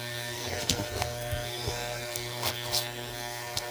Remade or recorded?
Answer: remade